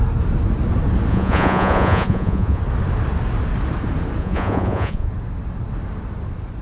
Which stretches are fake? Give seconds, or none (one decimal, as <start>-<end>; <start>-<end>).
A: 1.1-2.6; 4.2-5.1